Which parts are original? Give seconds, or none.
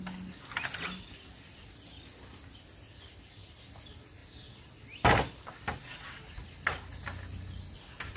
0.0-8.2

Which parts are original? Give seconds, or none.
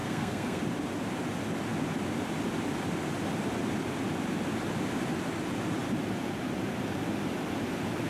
0.6-8.1